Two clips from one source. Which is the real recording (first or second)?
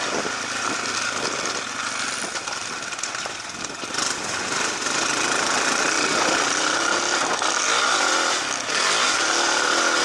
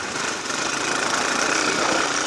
first